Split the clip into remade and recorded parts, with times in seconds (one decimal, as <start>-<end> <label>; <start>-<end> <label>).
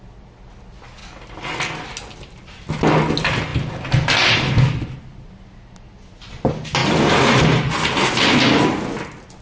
0.0-9.4 recorded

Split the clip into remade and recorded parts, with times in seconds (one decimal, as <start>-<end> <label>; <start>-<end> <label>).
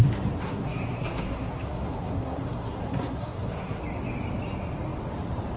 0.0-0.4 recorded; 0.4-3.8 remade; 3.8-5.6 recorded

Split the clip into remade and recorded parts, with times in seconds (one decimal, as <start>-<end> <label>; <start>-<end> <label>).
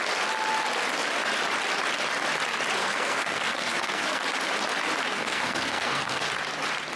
0.0-2.8 recorded; 2.8-4.2 remade; 4.2-5.1 recorded; 5.1-6.3 remade; 6.3-7.0 recorded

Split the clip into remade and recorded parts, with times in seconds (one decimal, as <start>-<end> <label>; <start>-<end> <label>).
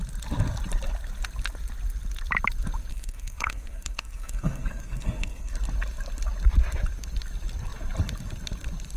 0.0-2.9 recorded; 2.9-5.5 remade; 5.5-9.0 recorded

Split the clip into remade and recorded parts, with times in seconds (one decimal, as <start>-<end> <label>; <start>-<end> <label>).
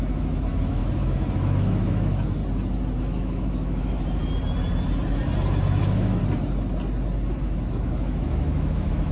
0.0-2.4 remade; 2.4-3.0 recorded; 3.0-4.2 remade; 4.2-5.8 recorded; 5.8-6.2 remade; 6.2-7.4 recorded; 7.4-9.1 remade